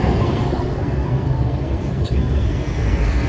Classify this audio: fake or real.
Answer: fake